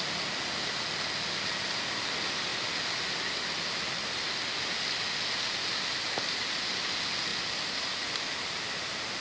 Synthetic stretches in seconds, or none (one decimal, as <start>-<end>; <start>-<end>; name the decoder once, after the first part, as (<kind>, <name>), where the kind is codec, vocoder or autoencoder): none